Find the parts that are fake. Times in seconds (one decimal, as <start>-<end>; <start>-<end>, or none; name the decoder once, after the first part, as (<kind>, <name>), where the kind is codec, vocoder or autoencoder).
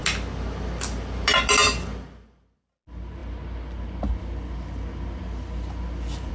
none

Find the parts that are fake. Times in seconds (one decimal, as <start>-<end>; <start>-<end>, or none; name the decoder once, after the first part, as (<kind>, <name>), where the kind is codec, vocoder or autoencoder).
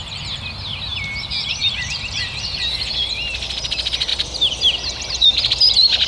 0.9-2.9 (vocoder, BigVGAN v2); 4.1-6.1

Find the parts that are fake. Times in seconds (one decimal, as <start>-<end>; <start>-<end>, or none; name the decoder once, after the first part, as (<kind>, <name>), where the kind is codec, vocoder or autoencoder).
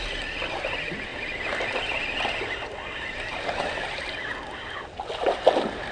none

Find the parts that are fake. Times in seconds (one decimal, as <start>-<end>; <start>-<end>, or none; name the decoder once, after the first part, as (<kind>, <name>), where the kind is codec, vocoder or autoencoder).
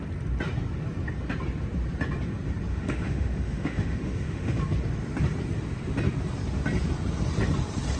2.7-4.6 (autoencoder, DAC-VAE)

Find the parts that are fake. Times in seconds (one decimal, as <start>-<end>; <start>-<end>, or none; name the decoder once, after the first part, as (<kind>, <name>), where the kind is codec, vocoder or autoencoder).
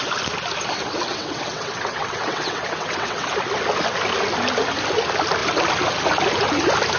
1.1-3.3 (vocoder, WaveNeXt)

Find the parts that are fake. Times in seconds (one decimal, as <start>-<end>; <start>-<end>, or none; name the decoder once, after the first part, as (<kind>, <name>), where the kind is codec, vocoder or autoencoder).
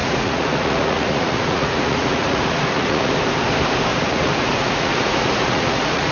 0.0-3.1 (vocoder, Vocos); 3.9-6.1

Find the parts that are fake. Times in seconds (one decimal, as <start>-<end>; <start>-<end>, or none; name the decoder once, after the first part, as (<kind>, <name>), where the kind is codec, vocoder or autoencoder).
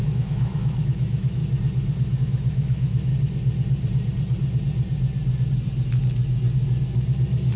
0.0-1.4 (autoencoder, DAC-VAE); 2.2-3.1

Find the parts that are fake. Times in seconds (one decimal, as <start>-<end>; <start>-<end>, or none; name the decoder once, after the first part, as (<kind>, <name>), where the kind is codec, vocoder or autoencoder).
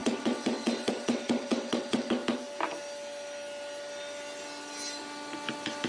0.0-2.2 (vocoder, WaveNeXt)